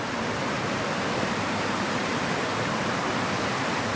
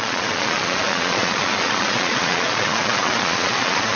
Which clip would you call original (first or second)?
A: first